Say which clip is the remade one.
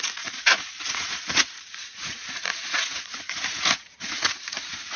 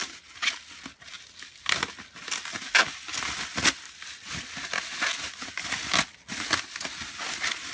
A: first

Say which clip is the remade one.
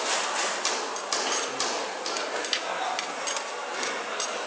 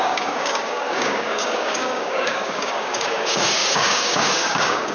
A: second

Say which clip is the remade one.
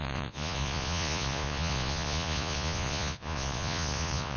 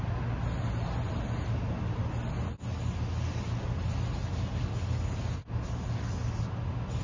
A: first